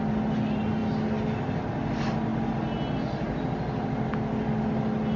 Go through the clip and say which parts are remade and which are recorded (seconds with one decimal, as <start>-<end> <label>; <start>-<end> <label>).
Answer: 0.0-5.2 recorded